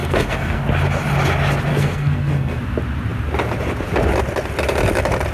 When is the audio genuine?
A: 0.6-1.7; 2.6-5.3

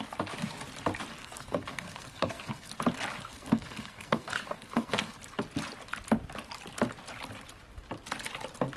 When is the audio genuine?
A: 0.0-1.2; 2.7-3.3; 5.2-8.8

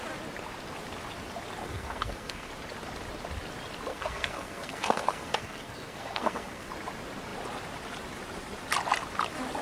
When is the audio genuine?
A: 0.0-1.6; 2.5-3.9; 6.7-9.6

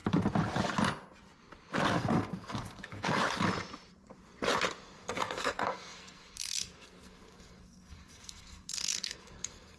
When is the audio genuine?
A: 0.0-1.9; 3.2-4.8

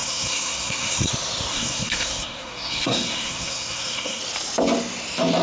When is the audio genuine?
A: 1.1-1.5; 4.2-5.4

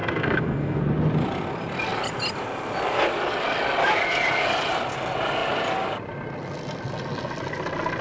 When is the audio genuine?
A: 0.8-8.0

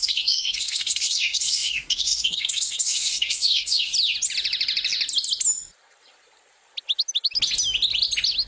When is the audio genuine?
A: 3.9-8.5